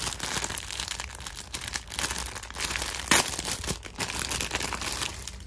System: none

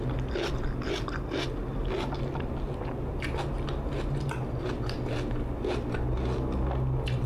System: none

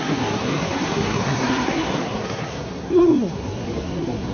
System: codec, SNAC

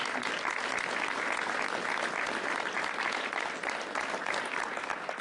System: none